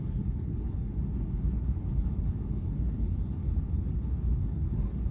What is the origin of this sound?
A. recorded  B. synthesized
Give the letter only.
B